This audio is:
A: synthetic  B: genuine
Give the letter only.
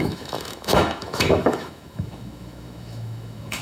A